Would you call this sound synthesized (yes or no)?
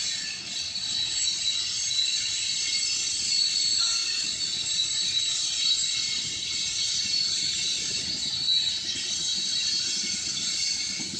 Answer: no